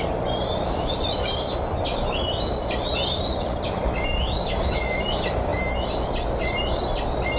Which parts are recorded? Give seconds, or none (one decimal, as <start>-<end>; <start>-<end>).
5.5-6.4